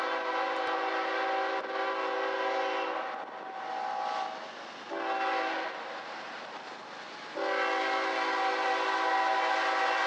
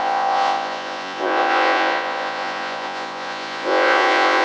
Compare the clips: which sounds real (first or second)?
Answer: first